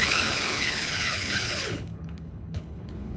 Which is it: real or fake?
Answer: fake